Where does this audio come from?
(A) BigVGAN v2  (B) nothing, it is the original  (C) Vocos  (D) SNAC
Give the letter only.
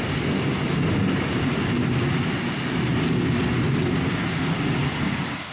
B